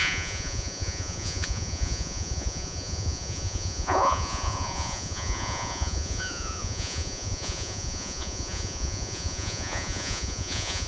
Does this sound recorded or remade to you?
remade